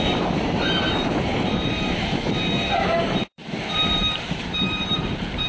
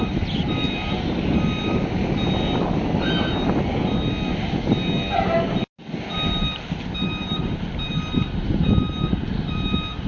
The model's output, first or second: first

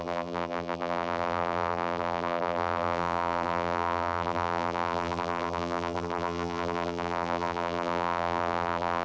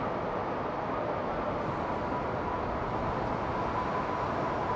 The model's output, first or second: first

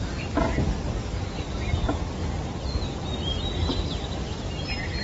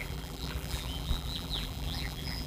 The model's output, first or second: second